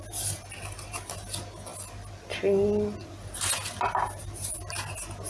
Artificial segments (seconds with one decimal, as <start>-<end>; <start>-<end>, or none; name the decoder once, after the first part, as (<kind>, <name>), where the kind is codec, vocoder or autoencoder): none